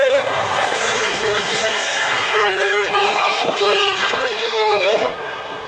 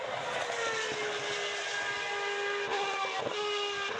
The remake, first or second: first